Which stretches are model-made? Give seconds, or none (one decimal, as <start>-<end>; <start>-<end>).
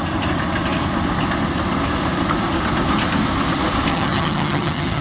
3.9-5.0